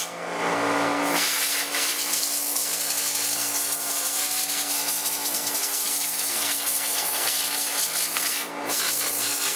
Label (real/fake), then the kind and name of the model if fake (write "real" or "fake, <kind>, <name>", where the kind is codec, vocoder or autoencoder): fake, codec, SNAC